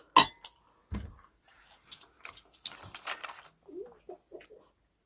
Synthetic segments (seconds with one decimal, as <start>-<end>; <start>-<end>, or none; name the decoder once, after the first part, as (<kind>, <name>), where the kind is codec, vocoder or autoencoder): none